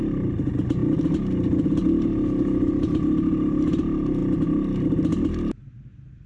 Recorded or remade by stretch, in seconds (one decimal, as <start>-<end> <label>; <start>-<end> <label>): 0.0-6.3 recorded